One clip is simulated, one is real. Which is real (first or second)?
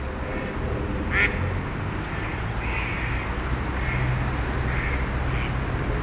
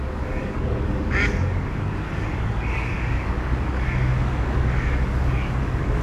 first